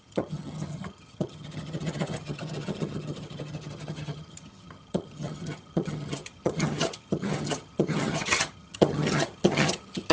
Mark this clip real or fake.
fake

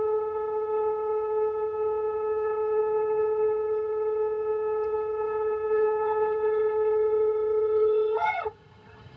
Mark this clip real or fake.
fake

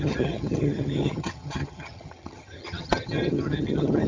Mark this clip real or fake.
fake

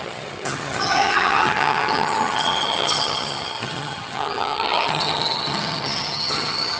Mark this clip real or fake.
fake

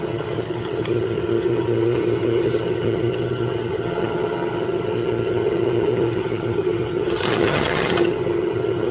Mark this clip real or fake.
fake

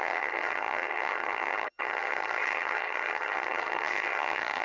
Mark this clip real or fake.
fake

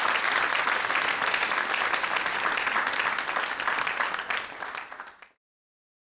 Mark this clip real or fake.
real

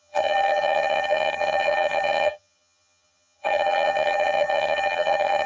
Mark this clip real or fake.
fake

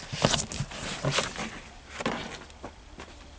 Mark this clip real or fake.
real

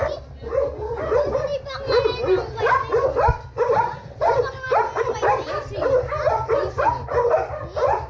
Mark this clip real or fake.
real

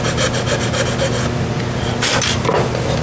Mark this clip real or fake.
real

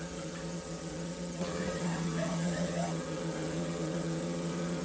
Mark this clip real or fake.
fake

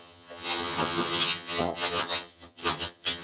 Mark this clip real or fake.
fake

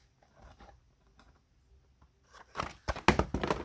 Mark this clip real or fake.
real